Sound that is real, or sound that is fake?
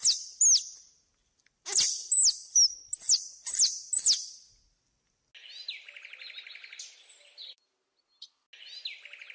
real